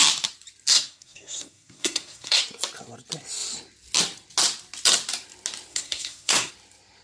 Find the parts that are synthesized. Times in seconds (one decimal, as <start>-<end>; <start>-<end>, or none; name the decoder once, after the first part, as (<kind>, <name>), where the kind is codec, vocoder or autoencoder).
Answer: 0.7-2.4 (codec, SNAC); 5.7-6.5